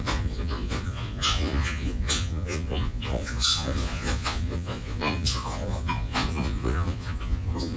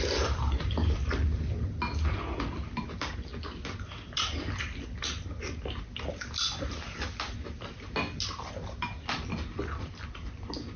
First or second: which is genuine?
second